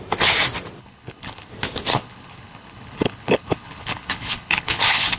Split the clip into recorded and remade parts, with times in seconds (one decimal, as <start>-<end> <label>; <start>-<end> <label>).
0.0-0.8 recorded; 0.8-1.5 remade; 1.5-1.9 recorded; 1.9-5.2 remade